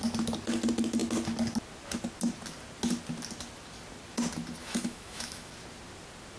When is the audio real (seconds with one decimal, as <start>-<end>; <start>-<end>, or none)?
0.0-4.6; 5.5-6.4